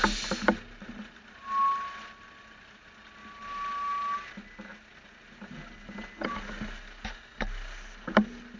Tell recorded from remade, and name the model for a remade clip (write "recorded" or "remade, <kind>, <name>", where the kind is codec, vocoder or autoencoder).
recorded